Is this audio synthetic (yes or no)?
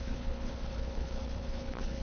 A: yes